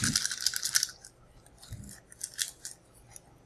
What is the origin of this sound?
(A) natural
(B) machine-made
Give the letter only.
A